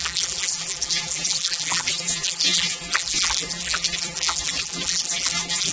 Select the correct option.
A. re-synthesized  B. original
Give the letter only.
A